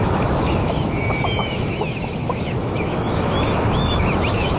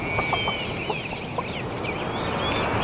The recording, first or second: second